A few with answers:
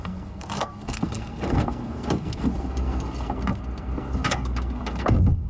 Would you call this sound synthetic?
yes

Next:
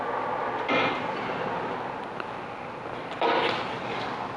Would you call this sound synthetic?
no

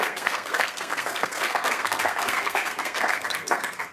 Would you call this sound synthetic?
yes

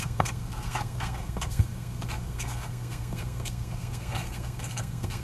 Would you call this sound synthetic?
yes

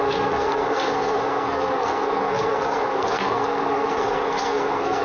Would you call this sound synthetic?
yes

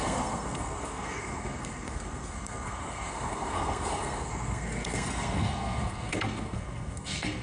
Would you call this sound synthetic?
yes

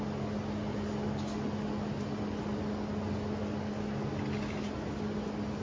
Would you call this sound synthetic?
no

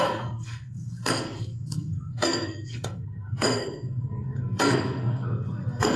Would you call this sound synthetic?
yes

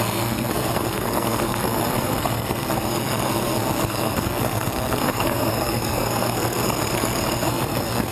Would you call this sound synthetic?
yes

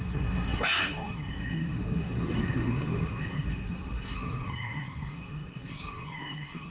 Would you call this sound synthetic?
yes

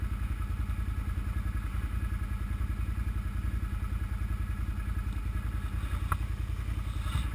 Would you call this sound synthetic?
no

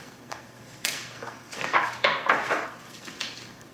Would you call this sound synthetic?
yes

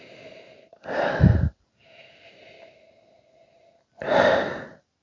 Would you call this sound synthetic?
no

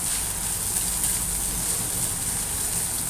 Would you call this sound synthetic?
no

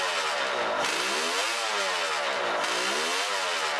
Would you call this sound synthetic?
no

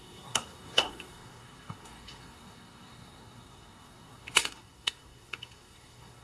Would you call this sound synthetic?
yes